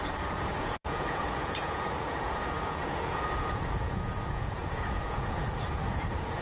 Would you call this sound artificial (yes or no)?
yes